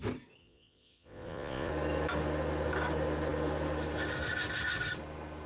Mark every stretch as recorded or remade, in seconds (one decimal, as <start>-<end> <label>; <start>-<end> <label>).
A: 0.0-0.4 recorded; 0.4-1.7 remade; 1.7-5.5 recorded